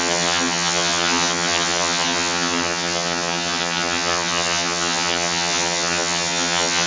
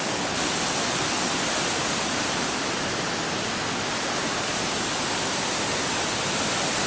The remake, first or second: first